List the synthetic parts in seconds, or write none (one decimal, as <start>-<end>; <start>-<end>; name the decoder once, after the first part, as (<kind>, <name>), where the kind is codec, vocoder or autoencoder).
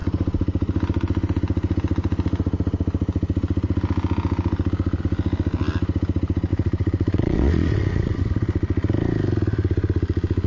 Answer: 6.5-8.2 (vocoder, WaveNeXt)